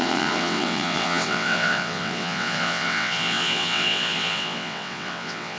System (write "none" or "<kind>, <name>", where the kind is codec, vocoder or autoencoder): vocoder, WaveNeXt